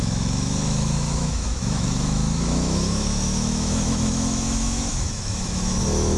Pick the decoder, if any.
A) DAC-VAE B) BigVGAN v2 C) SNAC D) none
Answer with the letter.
A